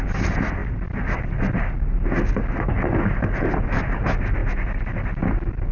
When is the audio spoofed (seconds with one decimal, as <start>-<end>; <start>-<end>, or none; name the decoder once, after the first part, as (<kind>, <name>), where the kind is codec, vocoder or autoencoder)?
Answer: none